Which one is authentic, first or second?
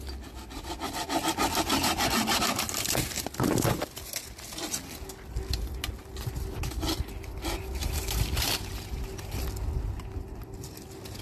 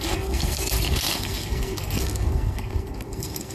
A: first